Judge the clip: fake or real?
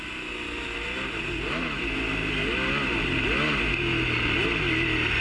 real